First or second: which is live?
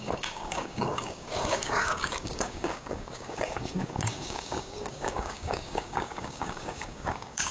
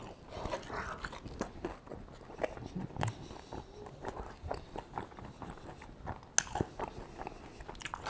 second